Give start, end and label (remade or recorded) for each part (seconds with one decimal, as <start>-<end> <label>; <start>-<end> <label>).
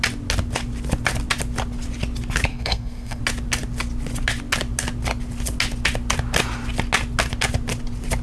0.0-2.5 recorded; 2.5-3.2 remade; 3.2-8.2 recorded